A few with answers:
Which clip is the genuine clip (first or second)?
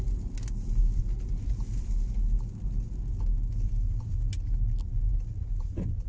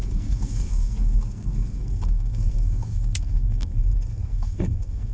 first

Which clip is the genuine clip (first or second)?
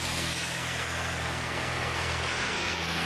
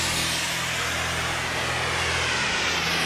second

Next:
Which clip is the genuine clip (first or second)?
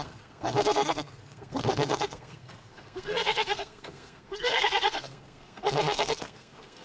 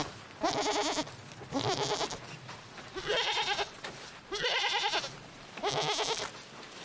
second